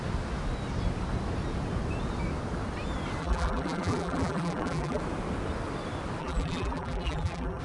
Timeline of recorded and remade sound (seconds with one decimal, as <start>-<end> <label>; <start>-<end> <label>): 0.0-3.2 recorded; 3.2-5.0 remade; 5.0-6.2 recorded; 6.2-7.6 remade